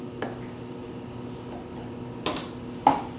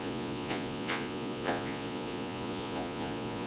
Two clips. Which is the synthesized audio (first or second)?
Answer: second